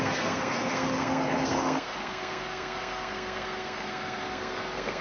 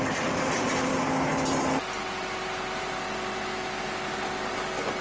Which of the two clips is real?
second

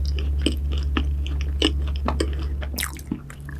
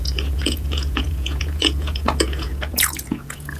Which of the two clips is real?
first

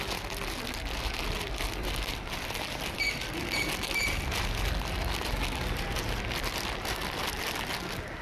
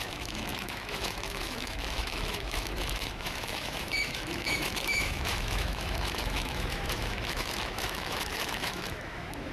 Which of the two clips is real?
first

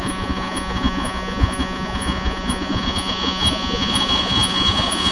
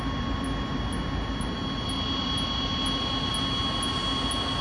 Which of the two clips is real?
second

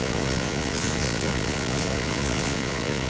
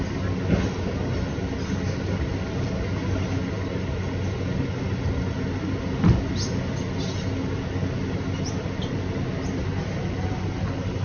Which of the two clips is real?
second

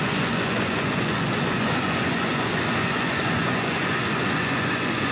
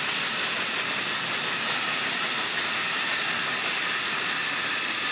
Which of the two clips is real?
second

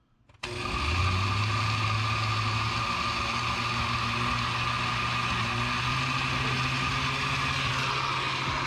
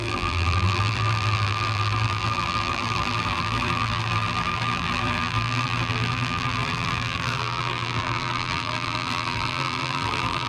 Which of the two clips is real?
first